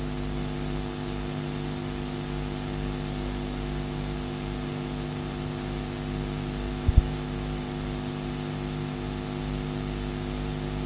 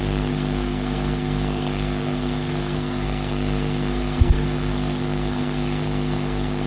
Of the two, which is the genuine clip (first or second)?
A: first